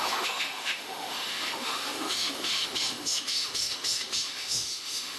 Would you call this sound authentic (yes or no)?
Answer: no